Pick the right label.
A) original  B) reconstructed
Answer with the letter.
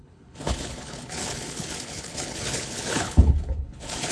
B